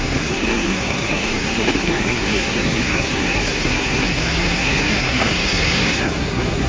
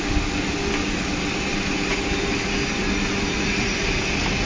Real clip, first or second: second